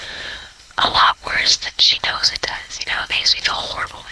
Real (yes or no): no